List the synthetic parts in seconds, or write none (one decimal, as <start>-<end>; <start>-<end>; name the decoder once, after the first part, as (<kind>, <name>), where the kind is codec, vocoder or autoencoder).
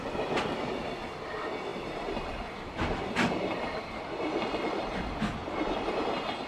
none